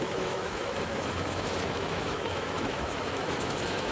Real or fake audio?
fake